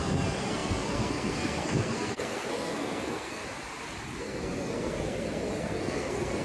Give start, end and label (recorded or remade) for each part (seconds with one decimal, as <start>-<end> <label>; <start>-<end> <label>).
0.0-3.4 remade; 3.4-4.2 recorded; 4.2-6.4 remade